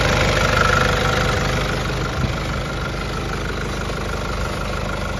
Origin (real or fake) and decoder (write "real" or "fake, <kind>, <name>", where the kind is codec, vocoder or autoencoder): real